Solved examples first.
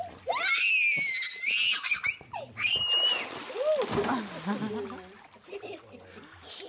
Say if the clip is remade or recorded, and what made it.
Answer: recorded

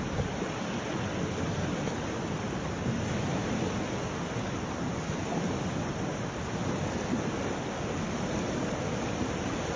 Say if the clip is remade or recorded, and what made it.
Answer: recorded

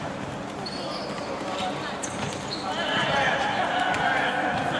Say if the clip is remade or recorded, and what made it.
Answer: recorded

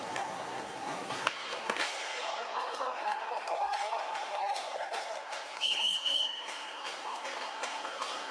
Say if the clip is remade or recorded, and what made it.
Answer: remade, codec, SNAC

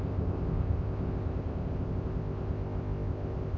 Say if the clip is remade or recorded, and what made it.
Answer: remade, codec, ZipCodec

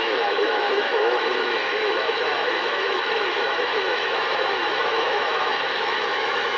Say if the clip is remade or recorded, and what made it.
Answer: remade, autoencoder, DAC-VAE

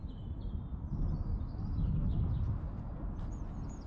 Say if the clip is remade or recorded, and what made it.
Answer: recorded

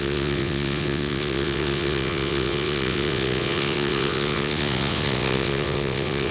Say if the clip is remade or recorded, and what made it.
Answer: remade, vocoder, WaveNeXt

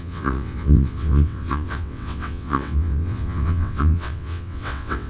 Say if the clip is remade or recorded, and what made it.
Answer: remade, vocoder, WaveNeXt